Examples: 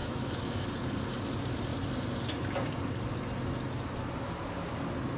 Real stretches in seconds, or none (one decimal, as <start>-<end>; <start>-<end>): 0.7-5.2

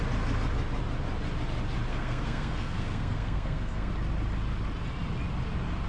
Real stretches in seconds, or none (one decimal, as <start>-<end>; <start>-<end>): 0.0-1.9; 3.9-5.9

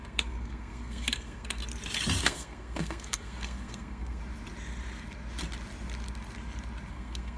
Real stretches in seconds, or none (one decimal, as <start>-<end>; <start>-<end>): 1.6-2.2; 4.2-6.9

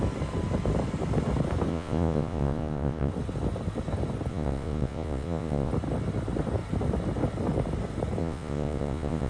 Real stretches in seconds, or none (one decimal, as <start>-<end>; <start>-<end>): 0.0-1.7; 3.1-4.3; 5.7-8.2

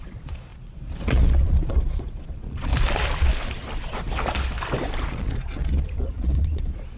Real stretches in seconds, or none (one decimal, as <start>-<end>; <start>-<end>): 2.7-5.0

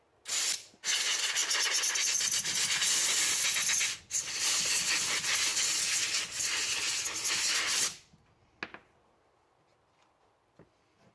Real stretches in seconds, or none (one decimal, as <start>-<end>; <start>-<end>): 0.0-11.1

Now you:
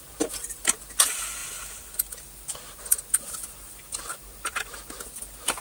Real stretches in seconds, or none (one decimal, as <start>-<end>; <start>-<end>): 0.0-5.6

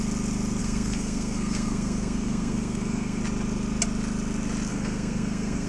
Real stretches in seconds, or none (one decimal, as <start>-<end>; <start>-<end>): 0.0-0.6; 3.2-4.7